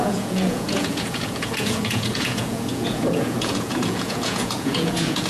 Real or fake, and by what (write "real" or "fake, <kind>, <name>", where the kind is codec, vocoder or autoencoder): fake, vocoder, Vocos